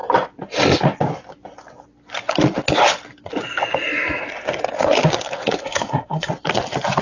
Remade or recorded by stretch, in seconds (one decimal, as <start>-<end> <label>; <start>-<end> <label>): 0.0-5.6 recorded; 5.6-6.3 remade; 6.3-7.0 recorded